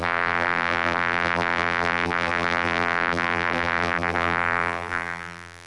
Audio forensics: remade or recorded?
remade